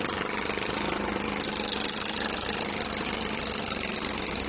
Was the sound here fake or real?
real